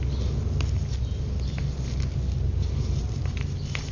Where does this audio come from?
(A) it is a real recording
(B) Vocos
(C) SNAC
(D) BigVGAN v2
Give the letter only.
A